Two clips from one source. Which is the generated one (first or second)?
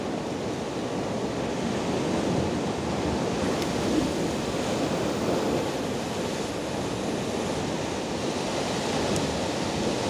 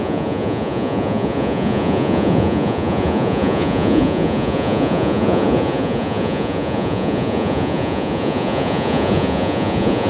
second